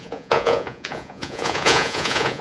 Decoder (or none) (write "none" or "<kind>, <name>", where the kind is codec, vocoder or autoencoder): vocoder, Vocos